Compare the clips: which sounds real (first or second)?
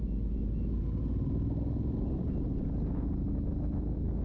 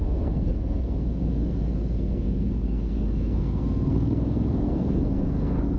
first